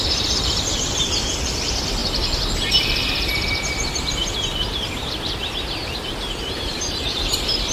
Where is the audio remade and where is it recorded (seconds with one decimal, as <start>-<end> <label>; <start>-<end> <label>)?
0.0-2.0 remade; 2.0-6.6 recorded; 6.6-7.7 remade